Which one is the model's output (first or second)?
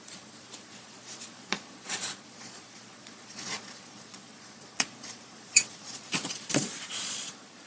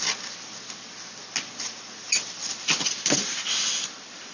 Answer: first